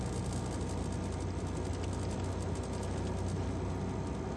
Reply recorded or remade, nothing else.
recorded